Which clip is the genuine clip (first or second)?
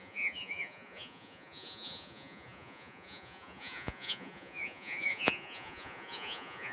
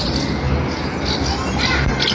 second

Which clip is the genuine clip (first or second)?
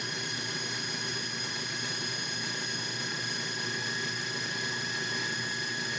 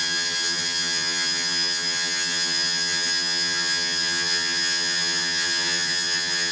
first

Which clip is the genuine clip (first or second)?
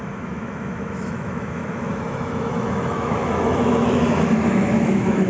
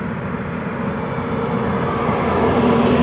second